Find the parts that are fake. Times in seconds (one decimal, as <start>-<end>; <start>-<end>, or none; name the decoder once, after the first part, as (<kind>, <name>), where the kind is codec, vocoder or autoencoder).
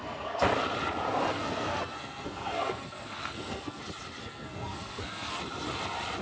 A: 0.0-0.5 (codec, SNAC); 1.3-3.8; 4.2-5.4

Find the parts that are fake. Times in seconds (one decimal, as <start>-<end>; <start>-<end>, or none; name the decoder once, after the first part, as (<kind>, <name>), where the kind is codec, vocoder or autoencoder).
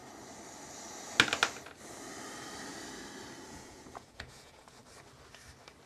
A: 3.5-4.8 (vocoder, Vocos)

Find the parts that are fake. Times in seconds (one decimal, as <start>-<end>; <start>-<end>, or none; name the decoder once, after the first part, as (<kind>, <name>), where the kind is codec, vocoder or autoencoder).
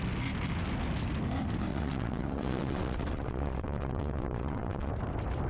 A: 1.7-4.9 (vocoder, WaveNeXt)